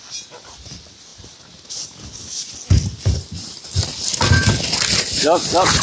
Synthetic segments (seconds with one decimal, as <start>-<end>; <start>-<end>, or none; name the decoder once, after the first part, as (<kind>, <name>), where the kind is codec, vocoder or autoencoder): none